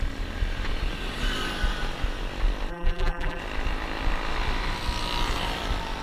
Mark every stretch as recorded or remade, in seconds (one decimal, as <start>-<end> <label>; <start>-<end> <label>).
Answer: 0.0-2.7 recorded; 2.7-3.4 remade; 3.4-6.0 recorded